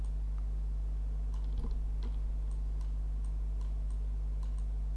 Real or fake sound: real